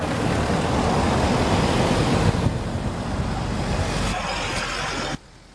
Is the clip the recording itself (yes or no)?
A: yes